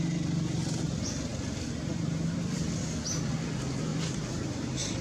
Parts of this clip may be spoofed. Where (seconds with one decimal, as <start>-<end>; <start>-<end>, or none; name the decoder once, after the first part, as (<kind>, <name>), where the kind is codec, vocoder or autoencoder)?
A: 3.9-5.0 (vocoder, BigVGAN v2)